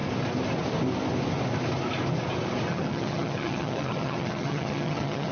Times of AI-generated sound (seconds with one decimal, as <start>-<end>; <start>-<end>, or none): 2.7-5.3